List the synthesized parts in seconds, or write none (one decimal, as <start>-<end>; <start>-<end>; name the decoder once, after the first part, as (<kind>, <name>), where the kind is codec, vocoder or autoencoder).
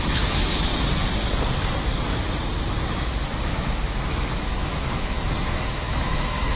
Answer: 0.0-0.7 (autoencoder, DAC-VAE); 4.1-6.6